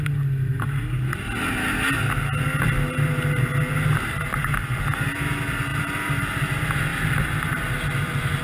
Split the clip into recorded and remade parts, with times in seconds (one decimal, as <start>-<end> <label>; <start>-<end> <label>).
0.0-5.7 recorded; 5.7-6.2 remade; 6.2-6.9 recorded; 6.9-7.4 remade; 7.4-8.4 recorded